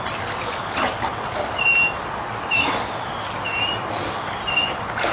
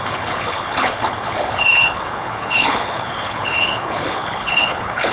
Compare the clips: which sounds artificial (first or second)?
second